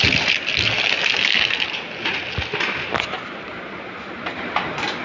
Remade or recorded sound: recorded